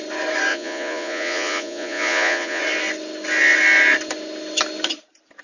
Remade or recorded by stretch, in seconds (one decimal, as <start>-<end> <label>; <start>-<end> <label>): 0.0-0.5 recorded; 0.5-2.6 remade; 2.6-5.4 recorded